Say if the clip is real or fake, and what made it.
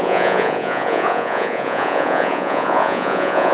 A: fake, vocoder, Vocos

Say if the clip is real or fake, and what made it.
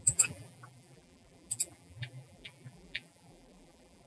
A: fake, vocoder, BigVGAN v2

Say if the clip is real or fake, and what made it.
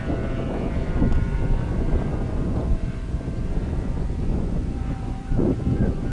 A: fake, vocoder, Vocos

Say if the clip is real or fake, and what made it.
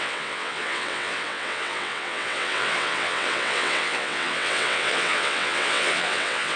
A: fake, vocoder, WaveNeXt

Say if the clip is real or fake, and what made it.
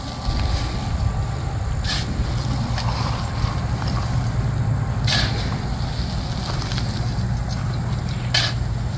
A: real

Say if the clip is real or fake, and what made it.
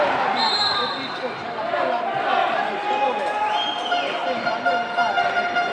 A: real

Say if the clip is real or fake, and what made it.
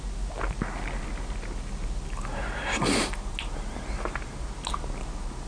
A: real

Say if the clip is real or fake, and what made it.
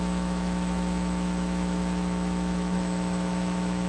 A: fake, autoencoder, DAC-VAE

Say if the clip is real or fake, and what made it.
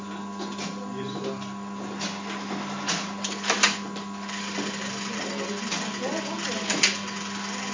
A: real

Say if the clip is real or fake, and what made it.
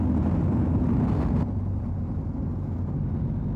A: real